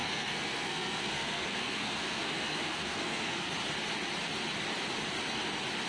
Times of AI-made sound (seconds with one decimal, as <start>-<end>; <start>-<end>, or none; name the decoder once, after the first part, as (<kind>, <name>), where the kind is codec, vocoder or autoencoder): 0.0-3.5 (codec, SNAC)

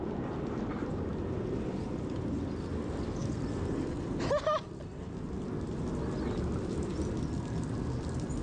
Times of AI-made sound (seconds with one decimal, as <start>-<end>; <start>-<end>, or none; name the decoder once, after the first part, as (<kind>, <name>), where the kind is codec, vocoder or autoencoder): none

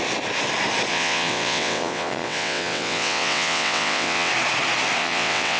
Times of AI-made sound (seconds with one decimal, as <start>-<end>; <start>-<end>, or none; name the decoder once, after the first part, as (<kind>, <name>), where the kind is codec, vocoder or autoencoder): 0.9-4.3 (vocoder, WaveNeXt); 5.0-5.6

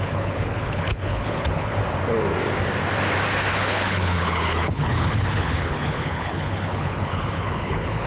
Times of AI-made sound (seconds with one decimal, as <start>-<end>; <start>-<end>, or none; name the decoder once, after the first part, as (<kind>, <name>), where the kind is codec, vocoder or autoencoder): 0.0-1.7 (codec, HILCodec); 3.5-8.1